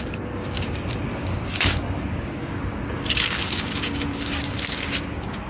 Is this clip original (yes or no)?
no